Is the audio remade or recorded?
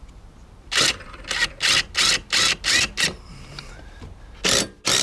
recorded